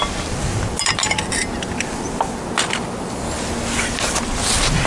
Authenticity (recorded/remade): recorded